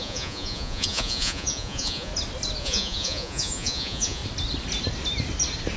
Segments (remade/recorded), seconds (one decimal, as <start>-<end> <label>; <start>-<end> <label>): 0.0-2.1 remade; 2.1-2.6 recorded; 2.6-4.2 remade; 4.2-5.8 recorded